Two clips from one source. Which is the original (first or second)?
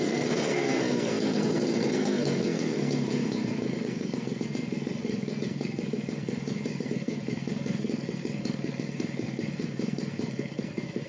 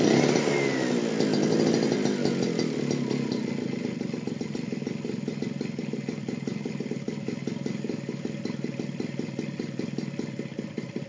second